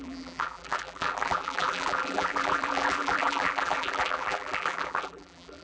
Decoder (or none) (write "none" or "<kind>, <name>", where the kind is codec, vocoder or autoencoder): vocoder, BigVGAN v2